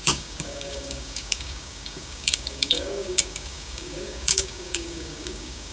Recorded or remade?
remade